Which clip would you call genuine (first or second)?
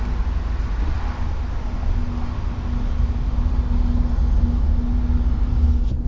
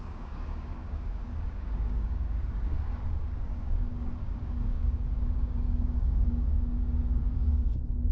first